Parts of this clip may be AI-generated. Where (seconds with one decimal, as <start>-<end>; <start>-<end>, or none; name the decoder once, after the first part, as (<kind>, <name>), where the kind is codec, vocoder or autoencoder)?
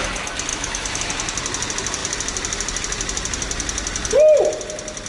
0.5-1.0 (autoencoder, DAC-VAE)